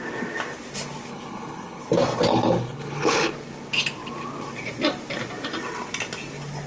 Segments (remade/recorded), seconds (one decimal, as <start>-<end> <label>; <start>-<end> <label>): 0.0-1.1 recorded; 1.1-1.8 remade; 1.8-2.3 recorded; 2.3-3.3 remade; 3.3-6.7 recorded